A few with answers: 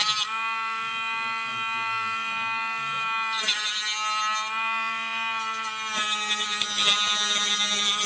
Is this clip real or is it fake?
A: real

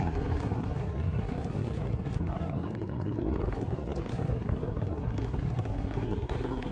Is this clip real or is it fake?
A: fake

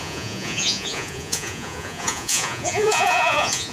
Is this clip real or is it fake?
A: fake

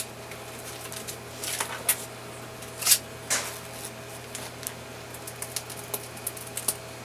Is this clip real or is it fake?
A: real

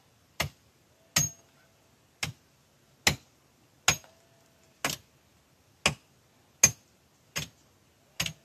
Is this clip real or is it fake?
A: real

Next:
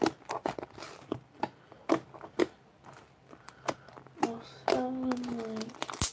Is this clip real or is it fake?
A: real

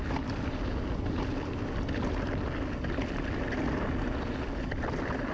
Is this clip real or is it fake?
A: real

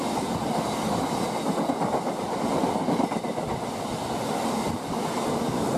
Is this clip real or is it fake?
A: real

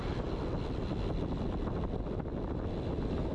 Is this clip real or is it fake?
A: real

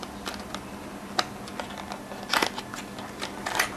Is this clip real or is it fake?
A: real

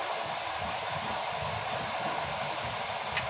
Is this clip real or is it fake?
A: real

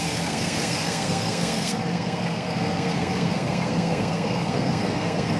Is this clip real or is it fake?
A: fake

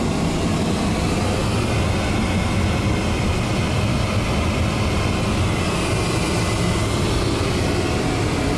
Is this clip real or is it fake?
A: real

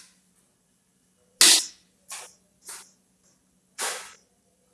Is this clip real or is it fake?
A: real